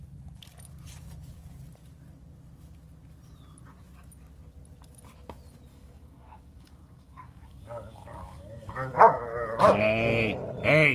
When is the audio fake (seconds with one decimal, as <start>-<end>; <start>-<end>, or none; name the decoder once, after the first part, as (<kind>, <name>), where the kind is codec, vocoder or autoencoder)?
5.7-9.8 (codec, DAC)